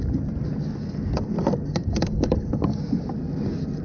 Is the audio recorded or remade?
recorded